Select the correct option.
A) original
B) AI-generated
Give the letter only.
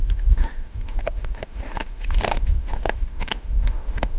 B